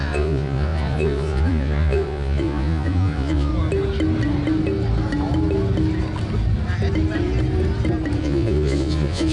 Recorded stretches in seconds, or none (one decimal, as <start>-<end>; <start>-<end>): 3.5-8.2